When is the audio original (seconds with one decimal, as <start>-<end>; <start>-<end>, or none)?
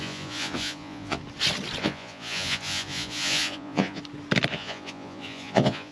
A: 1.2-1.8; 4.0-4.5